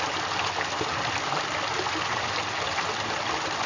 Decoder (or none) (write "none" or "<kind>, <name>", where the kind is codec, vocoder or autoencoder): none